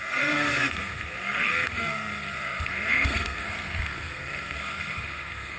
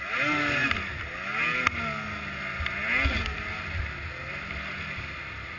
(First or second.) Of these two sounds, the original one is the second